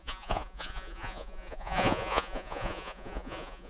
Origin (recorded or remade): remade